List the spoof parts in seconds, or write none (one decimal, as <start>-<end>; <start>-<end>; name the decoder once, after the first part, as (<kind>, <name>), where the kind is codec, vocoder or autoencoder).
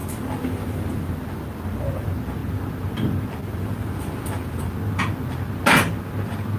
none